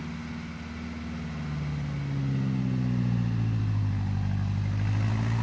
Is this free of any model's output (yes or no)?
yes